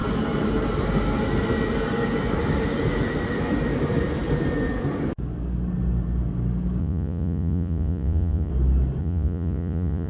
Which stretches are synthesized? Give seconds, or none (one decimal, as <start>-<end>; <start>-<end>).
6.8-8.5; 9.0-10.1